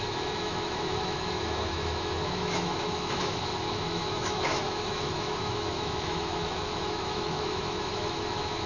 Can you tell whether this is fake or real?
fake